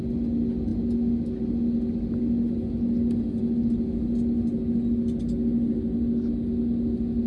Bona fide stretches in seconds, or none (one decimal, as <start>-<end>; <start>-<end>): 0.0-7.3